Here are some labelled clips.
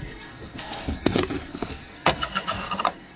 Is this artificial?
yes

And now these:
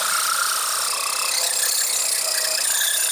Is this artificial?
no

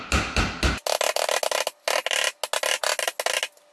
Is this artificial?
no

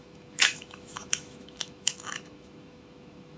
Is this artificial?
yes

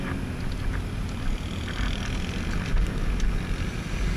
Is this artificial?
no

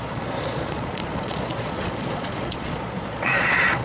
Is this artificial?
yes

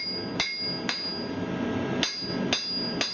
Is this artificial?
no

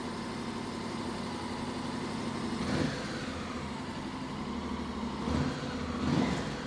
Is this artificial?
no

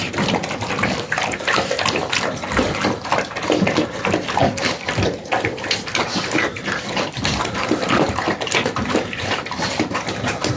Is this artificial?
no